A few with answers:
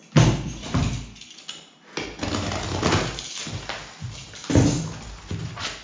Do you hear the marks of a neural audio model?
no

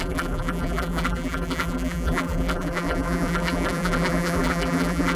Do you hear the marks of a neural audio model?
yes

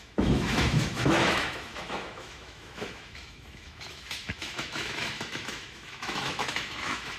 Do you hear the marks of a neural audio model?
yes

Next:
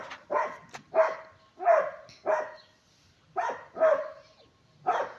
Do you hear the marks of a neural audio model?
no